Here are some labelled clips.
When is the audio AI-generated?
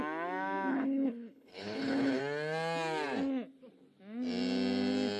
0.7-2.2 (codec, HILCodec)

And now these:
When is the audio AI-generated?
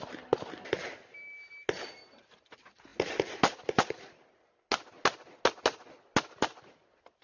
none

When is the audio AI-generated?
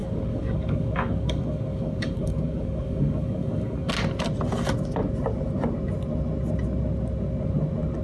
0.0-3.9 (codec, DAC)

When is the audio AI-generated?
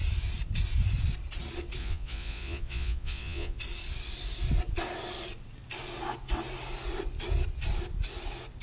1.8-3.6 (vocoder, Vocos)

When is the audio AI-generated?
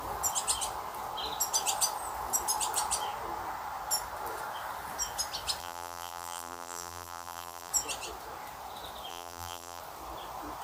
5.6-7.7 (vocoder, BigVGAN v2); 9.1-9.8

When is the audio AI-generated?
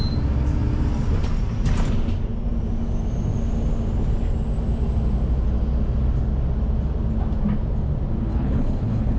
8.3-9.2 (codec, HILCodec)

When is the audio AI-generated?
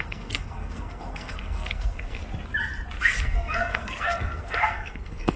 0.0-2.2 (codec, SNAC); 3.0-5.4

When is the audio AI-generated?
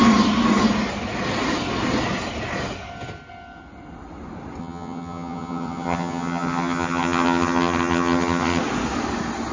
4.6-8.6 (vocoder, HiFi-GAN)